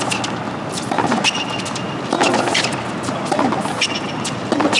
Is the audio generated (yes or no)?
no